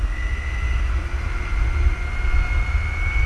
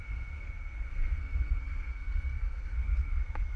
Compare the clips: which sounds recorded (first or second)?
first